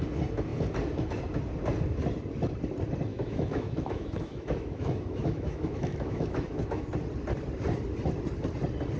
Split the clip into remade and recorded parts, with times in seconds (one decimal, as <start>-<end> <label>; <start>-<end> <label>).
0.0-3.1 recorded; 3.1-6.9 remade; 6.9-9.0 recorded